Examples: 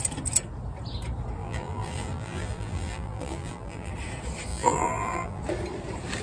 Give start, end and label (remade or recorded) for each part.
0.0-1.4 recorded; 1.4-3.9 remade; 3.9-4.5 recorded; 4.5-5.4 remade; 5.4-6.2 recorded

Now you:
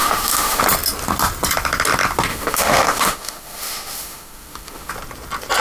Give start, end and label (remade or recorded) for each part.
0.0-0.6 remade; 0.6-2.3 recorded; 2.3-4.9 remade; 4.9-5.6 recorded